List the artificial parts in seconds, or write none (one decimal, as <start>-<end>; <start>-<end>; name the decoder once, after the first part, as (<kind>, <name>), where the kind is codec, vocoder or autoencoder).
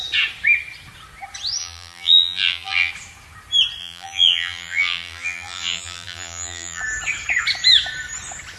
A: 1.6-2.9 (vocoder, BigVGAN v2); 3.8-6.8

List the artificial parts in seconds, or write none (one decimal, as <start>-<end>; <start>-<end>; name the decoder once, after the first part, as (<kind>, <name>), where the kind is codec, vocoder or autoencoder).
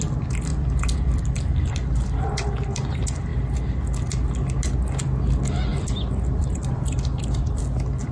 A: 0.5-2.5 (vocoder, BigVGAN v2); 5.7-7.6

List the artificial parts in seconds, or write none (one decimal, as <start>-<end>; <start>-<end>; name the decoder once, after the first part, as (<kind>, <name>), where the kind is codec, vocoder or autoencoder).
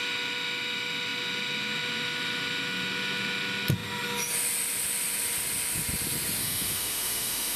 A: 6.4-7.6 (autoencoder, DAC-VAE)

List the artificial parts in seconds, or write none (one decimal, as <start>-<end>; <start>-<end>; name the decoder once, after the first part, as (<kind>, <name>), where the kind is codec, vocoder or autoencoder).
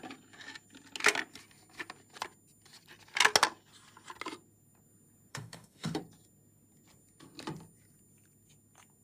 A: 5.3-6.0 (autoencoder, DAC-VAE)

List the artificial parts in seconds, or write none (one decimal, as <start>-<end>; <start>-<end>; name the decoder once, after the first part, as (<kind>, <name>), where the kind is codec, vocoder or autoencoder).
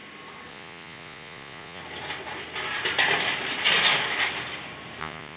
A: 0.5-1.8 (vocoder, Vocos); 5.0-5.4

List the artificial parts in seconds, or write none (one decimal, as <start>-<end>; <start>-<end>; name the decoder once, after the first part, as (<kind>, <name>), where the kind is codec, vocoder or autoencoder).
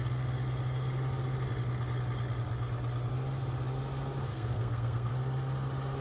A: 4.3-5.1 (codec, SNAC)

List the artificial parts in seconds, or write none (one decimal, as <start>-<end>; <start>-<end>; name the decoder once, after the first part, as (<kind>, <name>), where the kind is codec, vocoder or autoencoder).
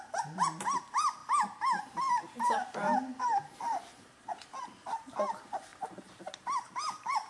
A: 0.0-1.2 (vocoder, BigVGAN v2); 1.8-7.3